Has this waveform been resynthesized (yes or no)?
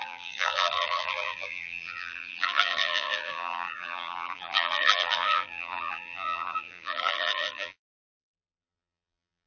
yes